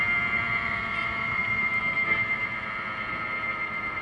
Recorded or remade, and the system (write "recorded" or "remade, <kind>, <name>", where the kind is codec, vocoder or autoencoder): recorded